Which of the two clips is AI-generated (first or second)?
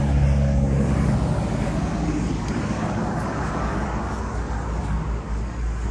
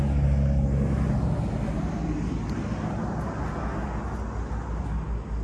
first